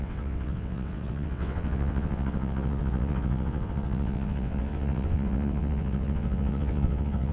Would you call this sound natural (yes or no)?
no